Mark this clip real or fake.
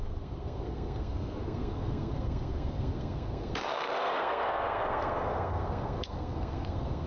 fake